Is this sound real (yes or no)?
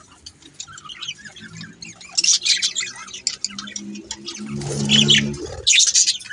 yes